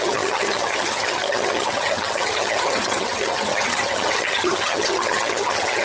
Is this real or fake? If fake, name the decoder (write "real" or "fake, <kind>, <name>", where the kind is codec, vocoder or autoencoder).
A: fake, vocoder, HiFi-GAN